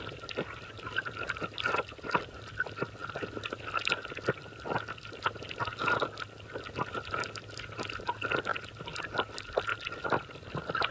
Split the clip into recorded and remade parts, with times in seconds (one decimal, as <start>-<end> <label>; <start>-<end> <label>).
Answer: 0.0-3.0 recorded; 3.0-3.9 remade; 3.9-9.7 recorded; 9.7-10.9 remade